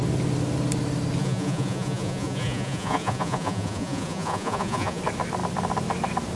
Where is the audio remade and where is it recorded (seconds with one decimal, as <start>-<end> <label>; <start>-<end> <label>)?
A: 0.0-1.2 recorded; 1.2-5.0 remade; 5.0-6.4 recorded